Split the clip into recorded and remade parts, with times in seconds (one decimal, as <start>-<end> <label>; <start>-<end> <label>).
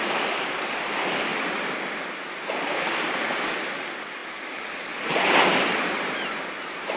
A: 0.0-4.2 remade; 4.2-4.8 recorded; 4.8-7.0 remade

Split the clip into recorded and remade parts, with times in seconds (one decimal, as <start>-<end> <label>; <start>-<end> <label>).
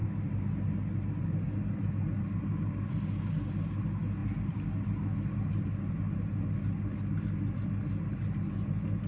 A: 0.0-9.1 recorded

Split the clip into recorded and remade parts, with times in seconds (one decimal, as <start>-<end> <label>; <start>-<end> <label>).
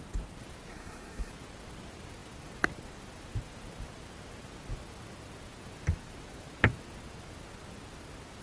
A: 0.0-0.7 recorded; 0.7-1.3 remade; 1.3-8.4 recorded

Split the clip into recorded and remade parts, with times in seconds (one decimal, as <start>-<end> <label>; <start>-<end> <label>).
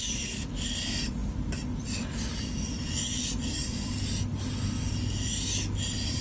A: 0.0-6.2 recorded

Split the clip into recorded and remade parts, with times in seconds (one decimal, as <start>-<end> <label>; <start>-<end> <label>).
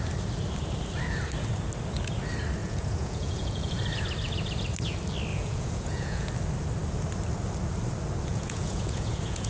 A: 0.0-2.6 recorded; 2.6-3.8 remade; 3.8-5.3 recorded; 5.3-6.3 remade; 6.3-8.3 recorded; 8.3-9.5 remade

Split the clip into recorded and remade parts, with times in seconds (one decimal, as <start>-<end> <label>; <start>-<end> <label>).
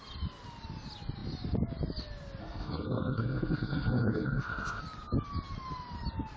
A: 0.0-2.4 recorded; 2.4-4.8 remade; 4.8-6.4 recorded